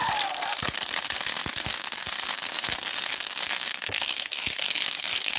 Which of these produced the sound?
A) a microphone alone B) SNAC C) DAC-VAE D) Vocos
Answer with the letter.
B